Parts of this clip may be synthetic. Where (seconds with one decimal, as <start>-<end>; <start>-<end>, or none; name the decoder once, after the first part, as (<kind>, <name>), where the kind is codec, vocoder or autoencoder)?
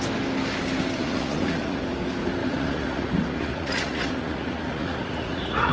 1.0-1.8 (vocoder, Vocos); 2.4-5.7